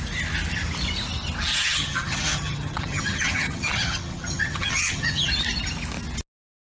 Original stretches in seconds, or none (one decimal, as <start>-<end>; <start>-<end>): 0.0-1.5; 5.3-6.6